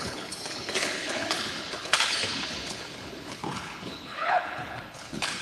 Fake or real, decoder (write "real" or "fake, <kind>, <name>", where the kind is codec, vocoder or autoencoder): fake, codec, HILCodec